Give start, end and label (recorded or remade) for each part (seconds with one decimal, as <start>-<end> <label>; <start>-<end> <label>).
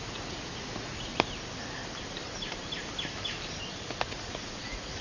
0.0-1.1 remade; 1.1-4.1 recorded; 4.1-5.0 remade